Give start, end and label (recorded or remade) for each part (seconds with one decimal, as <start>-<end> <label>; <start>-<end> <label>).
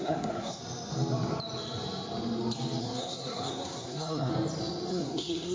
0.0-0.6 remade; 0.6-2.8 recorded; 2.8-4.3 remade; 4.3-4.9 recorded; 4.9-5.5 remade